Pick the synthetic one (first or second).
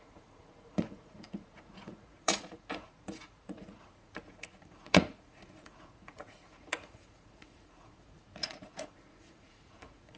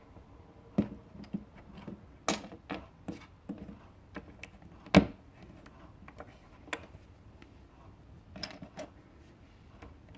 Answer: first